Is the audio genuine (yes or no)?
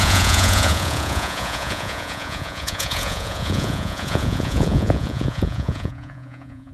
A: no